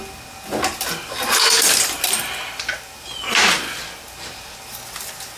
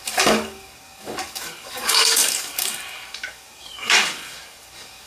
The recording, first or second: first